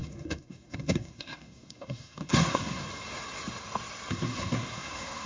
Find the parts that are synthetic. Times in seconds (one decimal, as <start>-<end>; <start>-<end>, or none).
0.0-2.8; 4.1-5.3